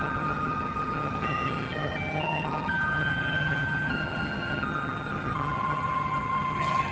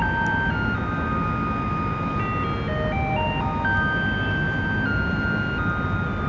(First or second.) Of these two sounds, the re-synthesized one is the first